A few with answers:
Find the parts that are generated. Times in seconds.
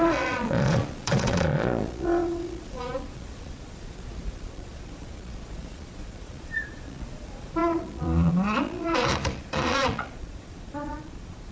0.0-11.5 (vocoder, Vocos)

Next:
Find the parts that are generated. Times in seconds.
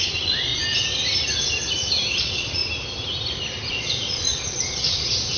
0.0-0.5 (vocoder, Vocos); 2.1-2.6; 3.7-5.4